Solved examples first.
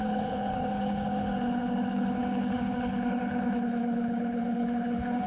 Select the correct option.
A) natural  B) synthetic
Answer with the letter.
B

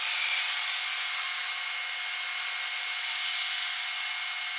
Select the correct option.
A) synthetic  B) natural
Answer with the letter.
B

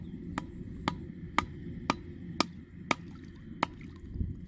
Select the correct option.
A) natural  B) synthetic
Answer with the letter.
A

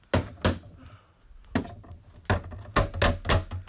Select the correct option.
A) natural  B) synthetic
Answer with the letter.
A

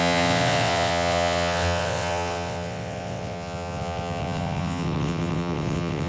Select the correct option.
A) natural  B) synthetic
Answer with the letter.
B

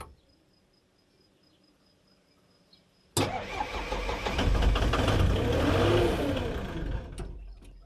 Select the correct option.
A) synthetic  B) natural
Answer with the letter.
B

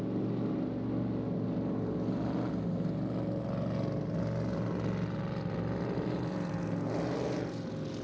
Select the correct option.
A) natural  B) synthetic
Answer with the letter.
A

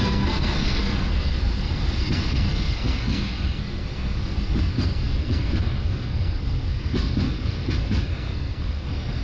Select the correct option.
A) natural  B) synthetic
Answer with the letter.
B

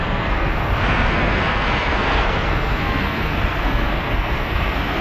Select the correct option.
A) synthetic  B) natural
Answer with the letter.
A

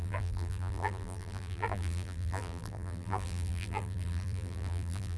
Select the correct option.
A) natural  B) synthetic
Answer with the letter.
B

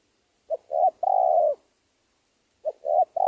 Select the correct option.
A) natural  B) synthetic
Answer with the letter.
A